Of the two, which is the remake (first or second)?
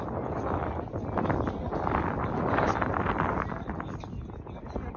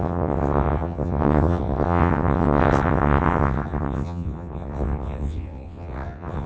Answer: second